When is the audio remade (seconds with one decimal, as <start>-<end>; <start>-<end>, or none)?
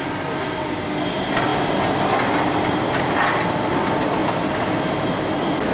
none